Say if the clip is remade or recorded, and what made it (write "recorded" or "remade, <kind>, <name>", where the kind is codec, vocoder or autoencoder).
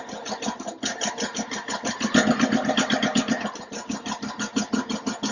recorded